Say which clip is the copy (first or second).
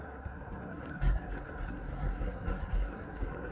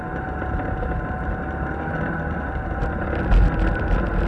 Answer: first